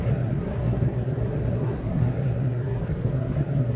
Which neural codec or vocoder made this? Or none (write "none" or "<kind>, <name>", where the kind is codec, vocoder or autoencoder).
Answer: codec, SNAC